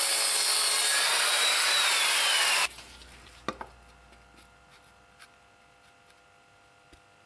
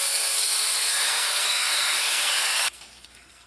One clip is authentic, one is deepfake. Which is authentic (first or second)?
first